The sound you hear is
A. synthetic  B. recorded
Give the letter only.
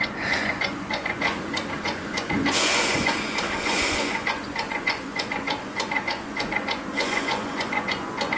A